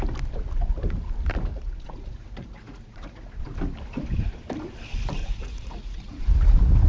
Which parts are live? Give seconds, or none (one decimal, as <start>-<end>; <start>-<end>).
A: 0.0-1.5; 3.4-5.2; 6.2-6.9